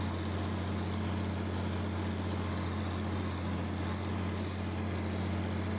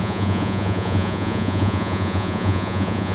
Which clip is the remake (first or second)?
second